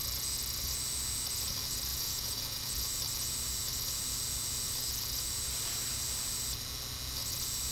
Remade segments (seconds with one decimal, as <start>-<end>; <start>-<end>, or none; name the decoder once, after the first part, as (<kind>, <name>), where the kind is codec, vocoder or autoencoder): 1.9-2.9 (vocoder, Vocos)